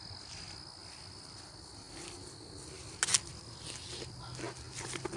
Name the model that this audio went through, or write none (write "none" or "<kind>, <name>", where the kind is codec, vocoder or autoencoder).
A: none